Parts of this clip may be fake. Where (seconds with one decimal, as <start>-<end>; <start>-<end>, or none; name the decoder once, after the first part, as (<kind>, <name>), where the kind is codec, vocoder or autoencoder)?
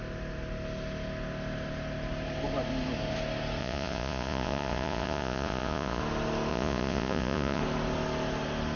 3.6-6.0 (vocoder, Vocos); 6.5-7.6